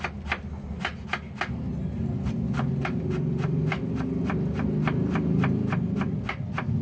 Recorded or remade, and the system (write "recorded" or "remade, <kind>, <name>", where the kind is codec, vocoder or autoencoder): recorded